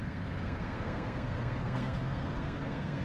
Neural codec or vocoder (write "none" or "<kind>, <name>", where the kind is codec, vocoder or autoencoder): codec, SNAC